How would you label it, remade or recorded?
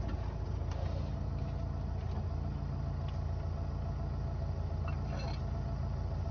recorded